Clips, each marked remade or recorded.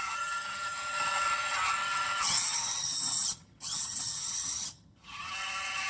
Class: remade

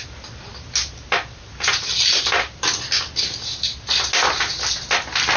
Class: recorded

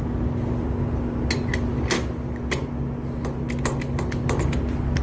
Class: recorded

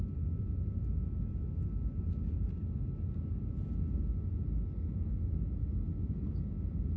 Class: recorded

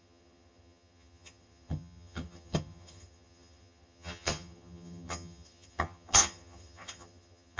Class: remade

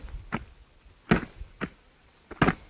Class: recorded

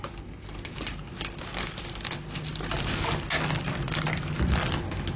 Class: recorded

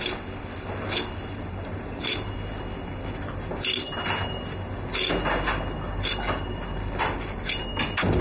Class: recorded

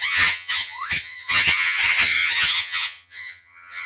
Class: remade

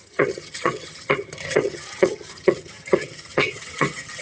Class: remade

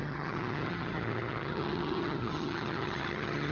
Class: remade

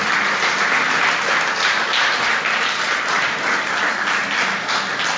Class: recorded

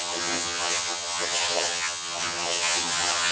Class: remade